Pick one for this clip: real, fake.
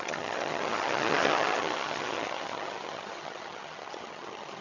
fake